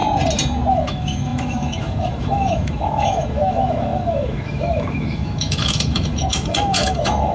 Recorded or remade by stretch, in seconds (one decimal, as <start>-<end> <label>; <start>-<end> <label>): 0.0-0.7 recorded; 0.7-7.3 remade